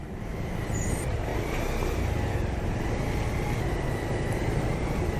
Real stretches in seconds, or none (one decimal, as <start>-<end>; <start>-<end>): 0.0-5.2